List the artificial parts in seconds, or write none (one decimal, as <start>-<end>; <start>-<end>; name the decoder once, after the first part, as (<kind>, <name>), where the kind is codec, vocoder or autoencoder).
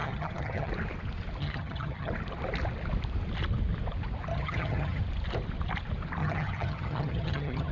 0.0-0.7 (vocoder, HiFi-GAN); 1.4-2.1; 4.3-5.0; 6.2-7.7